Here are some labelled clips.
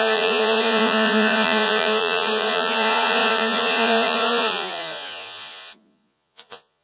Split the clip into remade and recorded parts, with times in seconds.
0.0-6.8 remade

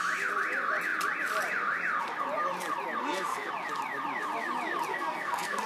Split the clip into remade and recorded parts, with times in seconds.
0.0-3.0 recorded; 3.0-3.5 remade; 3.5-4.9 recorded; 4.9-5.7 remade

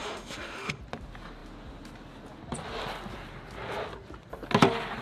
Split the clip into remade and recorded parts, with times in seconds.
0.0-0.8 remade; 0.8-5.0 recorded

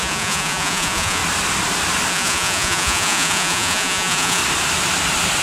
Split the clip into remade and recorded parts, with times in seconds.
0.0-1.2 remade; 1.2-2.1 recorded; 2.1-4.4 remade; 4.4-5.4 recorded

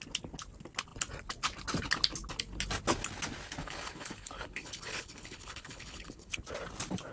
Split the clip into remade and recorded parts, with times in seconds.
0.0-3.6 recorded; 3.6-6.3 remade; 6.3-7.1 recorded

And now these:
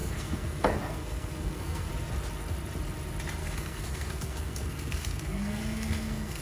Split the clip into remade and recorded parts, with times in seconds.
0.0-1.9 remade; 1.9-3.4 recorded; 3.4-6.4 remade

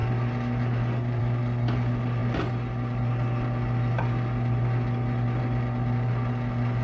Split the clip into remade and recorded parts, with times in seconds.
0.0-6.8 recorded